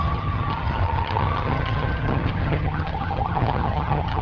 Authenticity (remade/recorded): remade